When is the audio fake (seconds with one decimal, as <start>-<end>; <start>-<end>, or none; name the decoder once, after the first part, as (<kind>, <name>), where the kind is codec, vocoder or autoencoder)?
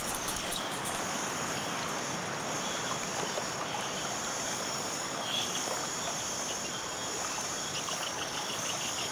0.0-1.8 (codec, DAC); 4.5-5.8; 7.8-9.1